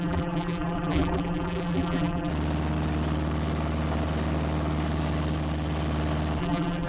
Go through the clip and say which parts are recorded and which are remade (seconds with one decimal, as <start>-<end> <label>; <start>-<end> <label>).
0.0-2.3 remade; 2.3-6.4 recorded; 6.4-6.9 remade

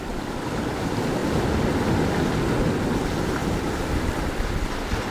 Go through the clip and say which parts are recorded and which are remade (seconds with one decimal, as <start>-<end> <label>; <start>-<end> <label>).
0.0-1.2 remade; 1.2-2.8 recorded; 2.8-5.1 remade

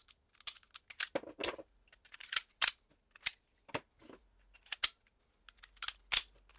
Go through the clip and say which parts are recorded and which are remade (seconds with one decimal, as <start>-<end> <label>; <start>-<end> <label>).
0.0-6.6 recorded

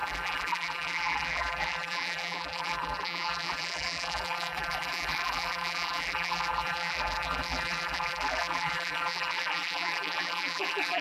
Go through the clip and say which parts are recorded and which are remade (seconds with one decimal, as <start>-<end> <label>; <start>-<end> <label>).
0.0-11.0 remade

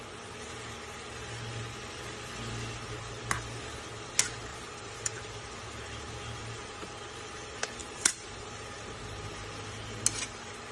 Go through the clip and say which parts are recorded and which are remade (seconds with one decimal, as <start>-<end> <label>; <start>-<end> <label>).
0.0-4.5 recorded; 4.5-5.3 remade; 5.3-7.8 recorded; 7.8-8.7 remade; 8.7-10.7 recorded

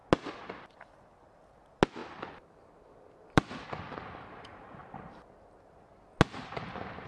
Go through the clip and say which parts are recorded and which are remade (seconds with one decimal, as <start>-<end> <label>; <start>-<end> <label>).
0.0-2.0 recorded; 2.0-5.8 remade; 5.8-7.1 recorded

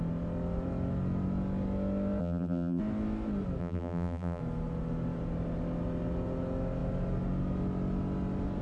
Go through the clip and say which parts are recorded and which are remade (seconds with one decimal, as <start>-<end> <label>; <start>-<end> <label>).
0.0-2.2 recorded; 2.2-2.8 remade; 2.8-3.6 recorded; 3.6-4.4 remade; 4.4-8.6 recorded

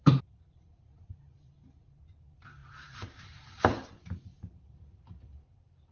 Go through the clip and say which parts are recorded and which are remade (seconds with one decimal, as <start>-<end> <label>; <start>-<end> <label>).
0.0-5.9 remade